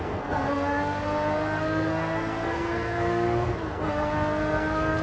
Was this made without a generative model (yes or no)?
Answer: no